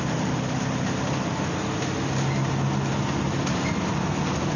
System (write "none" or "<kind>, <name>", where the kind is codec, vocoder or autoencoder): none